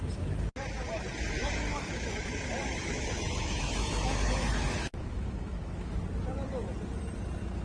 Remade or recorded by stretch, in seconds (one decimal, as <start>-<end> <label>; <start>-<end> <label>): 0.0-1.4 recorded; 1.4-6.0 remade; 6.0-7.6 recorded